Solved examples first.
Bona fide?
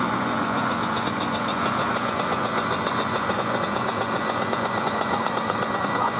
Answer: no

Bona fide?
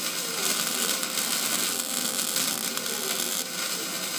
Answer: yes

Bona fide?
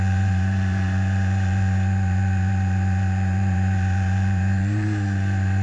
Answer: no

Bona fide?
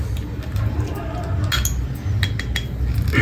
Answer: yes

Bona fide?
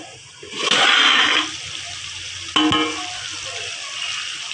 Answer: yes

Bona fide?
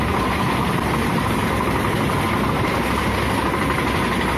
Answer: yes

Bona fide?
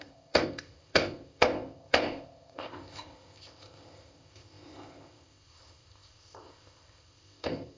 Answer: no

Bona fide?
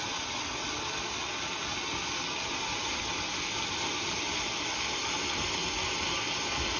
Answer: yes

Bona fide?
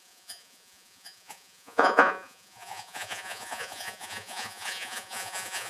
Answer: no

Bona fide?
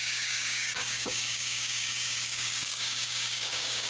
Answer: no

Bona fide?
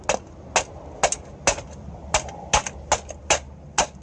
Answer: yes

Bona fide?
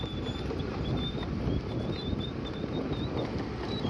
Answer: yes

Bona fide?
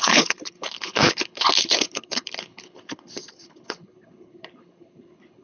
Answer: no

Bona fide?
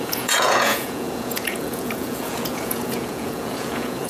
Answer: no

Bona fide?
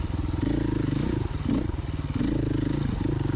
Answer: yes